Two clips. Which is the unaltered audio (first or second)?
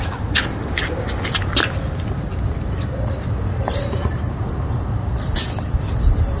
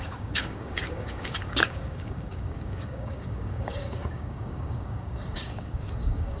first